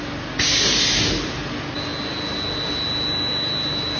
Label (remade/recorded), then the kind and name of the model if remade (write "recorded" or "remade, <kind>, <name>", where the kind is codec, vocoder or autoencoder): recorded